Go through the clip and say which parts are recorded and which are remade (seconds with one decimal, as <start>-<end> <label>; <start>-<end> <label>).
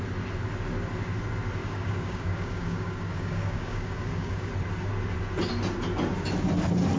0.0-1.6 recorded; 1.6-4.5 remade; 4.5-7.0 recorded